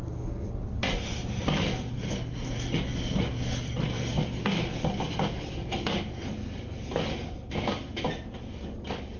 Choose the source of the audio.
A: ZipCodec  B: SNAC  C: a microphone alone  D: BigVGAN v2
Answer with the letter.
C